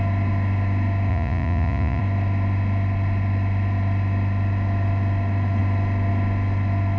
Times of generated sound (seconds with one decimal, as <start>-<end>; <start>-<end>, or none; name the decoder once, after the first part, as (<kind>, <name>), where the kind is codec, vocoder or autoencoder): 1.1-2.0 (vocoder, Vocos)